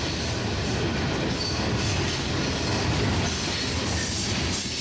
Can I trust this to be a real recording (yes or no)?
yes